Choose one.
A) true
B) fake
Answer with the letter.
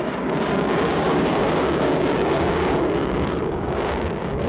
B